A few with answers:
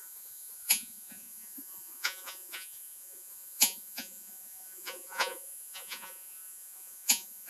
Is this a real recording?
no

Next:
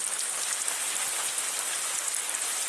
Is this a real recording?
yes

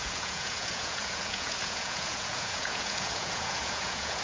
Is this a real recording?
no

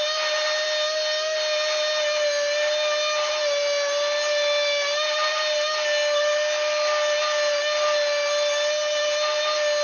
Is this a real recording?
yes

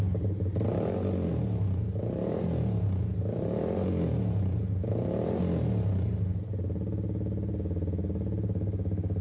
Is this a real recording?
yes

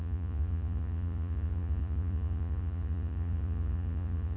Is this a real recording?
no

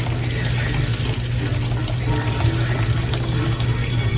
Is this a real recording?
yes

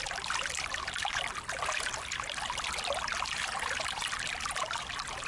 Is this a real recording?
yes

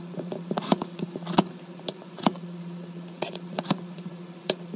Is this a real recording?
no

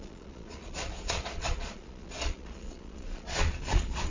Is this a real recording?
no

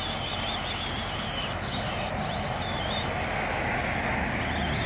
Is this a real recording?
yes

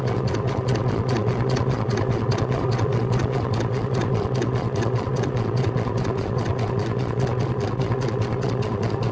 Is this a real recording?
no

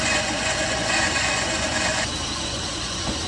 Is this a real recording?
no